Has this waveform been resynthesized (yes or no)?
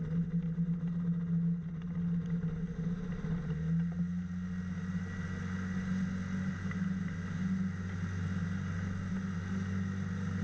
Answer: no